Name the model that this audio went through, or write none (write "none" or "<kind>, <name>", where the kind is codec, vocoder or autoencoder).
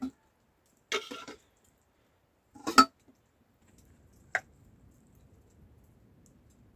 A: none